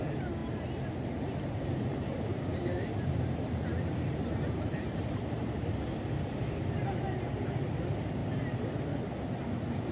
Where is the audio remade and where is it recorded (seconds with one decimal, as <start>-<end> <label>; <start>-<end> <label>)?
0.0-0.4 recorded; 0.4-5.6 remade; 5.6-9.9 recorded

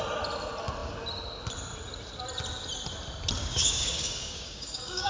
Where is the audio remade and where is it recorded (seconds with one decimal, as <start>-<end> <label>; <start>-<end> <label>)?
0.0-3.4 recorded; 3.4-5.1 remade

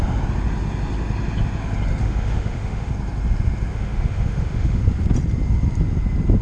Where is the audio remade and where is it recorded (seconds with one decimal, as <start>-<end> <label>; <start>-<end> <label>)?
0.0-2.0 recorded; 2.0-2.9 remade; 2.9-3.7 recorded; 3.7-4.8 remade; 4.8-6.4 recorded

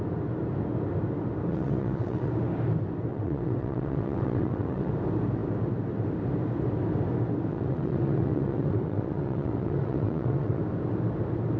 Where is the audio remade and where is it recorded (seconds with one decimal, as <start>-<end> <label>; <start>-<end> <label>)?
0.0-1.5 recorded; 1.5-2.3 remade; 2.3-3.1 recorded; 3.1-4.9 remade; 4.9-7.5 recorded; 7.5-10.6 remade; 10.6-11.6 recorded

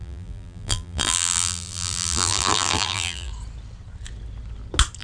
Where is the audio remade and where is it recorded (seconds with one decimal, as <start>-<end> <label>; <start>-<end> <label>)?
0.0-3.3 remade; 3.3-5.0 recorded

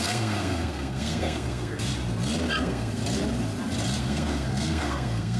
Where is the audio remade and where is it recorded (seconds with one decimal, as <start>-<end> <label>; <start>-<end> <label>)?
0.0-1.9 remade; 1.9-2.6 recorded; 2.6-3.0 remade; 3.0-4.0 recorded; 4.0-5.4 remade

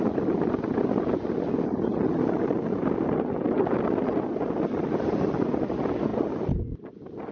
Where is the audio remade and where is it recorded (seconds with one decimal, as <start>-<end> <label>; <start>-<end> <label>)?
0.0-7.3 recorded